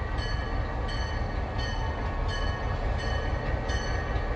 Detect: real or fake real